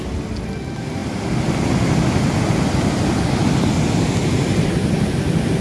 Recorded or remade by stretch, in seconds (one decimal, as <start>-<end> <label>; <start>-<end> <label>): 0.0-5.6 recorded